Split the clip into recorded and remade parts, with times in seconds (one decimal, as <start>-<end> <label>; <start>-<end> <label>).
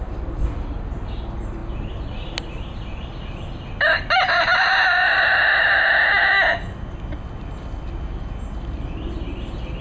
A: 0.0-9.8 recorded